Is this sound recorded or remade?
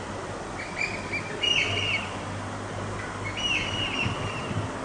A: recorded